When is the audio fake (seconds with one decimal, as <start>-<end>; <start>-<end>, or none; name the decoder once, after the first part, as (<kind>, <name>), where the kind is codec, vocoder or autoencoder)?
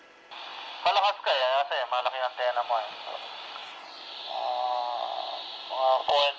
none